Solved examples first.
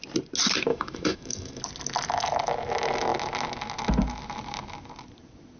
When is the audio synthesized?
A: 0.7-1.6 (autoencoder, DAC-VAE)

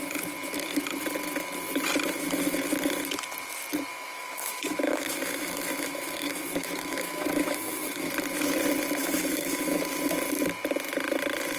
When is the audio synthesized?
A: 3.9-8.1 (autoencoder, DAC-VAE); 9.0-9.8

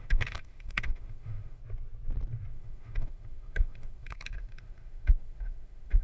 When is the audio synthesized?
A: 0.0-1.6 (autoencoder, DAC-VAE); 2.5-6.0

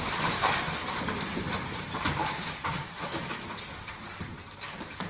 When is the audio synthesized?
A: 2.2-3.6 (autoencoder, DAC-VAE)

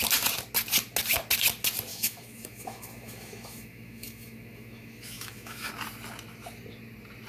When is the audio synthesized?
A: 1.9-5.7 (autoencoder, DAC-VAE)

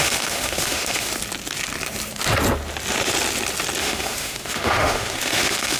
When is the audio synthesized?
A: 0.0-1.1 (autoencoder, DAC-VAE); 3.8-5.8

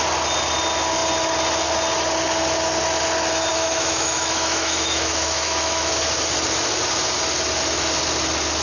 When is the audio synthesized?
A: 3.5-5.9 (autoencoder, DAC-VAE)